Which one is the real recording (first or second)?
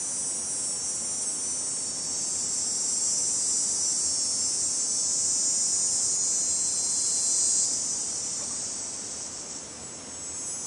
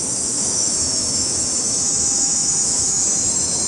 first